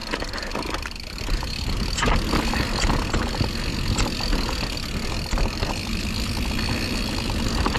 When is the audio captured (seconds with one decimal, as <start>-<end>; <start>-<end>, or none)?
0.0-7.8